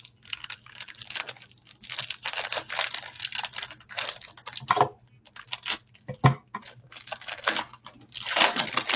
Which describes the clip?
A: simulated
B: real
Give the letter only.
B